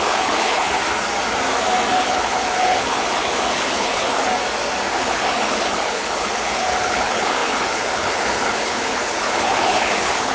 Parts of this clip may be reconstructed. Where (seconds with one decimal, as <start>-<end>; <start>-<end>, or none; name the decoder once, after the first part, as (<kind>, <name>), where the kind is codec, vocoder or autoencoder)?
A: 0.0-0.8 (codec, HILCodec); 1.9-4.3; 5.0-10.3